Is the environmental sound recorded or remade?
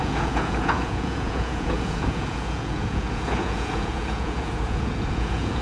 remade